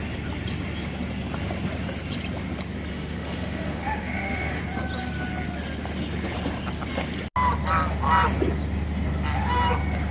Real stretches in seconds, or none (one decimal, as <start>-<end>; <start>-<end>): 0.0-2.9; 4.6-10.1